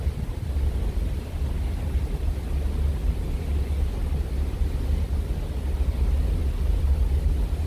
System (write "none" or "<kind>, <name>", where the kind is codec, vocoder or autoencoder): none